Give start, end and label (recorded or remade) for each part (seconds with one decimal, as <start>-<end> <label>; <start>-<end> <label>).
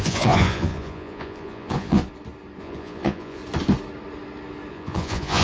0.0-2.0 remade; 2.0-2.6 recorded; 2.6-3.4 remade; 3.4-4.7 recorded; 4.7-5.4 remade